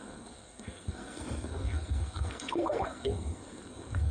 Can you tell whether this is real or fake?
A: fake